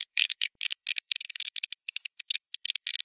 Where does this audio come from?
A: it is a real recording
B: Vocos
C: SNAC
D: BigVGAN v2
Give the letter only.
C